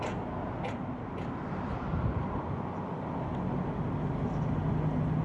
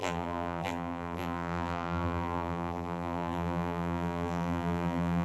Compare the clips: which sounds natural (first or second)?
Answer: first